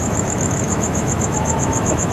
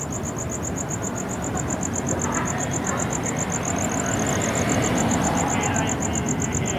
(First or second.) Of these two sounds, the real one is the second